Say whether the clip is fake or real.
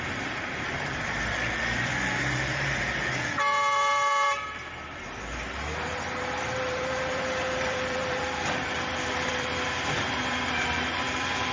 fake